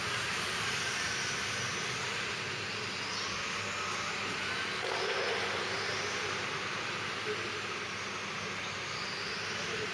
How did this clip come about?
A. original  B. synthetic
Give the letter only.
A